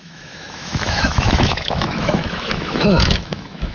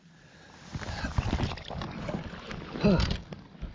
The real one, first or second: second